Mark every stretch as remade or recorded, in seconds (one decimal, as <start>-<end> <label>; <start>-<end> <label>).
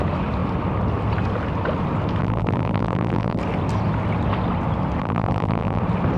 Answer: 0.0-2.2 recorded; 2.2-3.4 remade; 3.4-5.0 recorded; 5.0-5.8 remade; 5.8-6.2 recorded